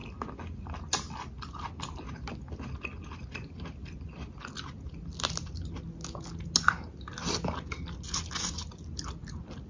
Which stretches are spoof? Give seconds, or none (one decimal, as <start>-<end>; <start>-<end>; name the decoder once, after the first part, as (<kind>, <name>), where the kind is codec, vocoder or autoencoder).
none